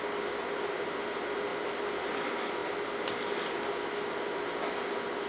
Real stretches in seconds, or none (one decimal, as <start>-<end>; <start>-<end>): 0.0-5.3